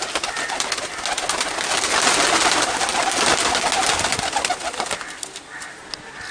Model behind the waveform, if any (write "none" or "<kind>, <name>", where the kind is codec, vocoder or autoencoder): none